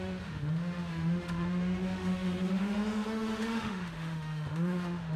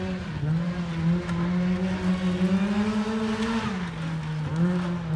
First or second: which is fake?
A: first